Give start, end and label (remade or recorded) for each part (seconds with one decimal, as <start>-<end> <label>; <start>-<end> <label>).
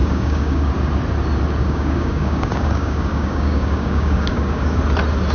0.0-0.7 remade; 0.7-1.6 recorded; 1.6-4.8 remade; 4.8-5.3 recorded